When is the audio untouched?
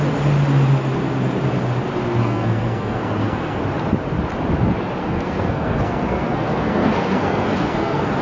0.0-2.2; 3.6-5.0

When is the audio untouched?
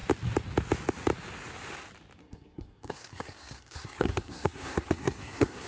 0.0-2.2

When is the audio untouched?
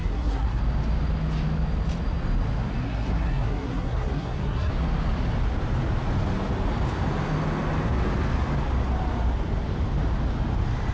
0.6-2.8; 4.7-10.9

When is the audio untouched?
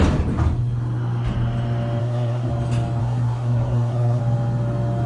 0.0-2.0; 2.5-3.0; 4.2-5.1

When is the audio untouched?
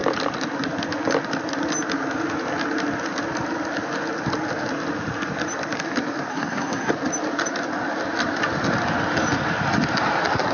0.0-6.3; 6.9-10.5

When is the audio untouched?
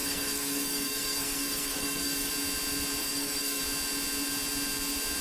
2.3-3.0; 3.6-5.2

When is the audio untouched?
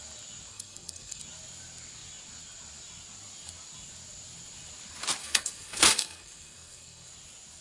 0.0-0.5; 1.2-5.2; 7.1-7.6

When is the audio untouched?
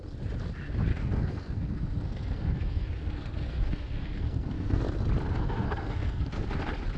0.0-0.9; 4.8-5.4; 6.5-7.0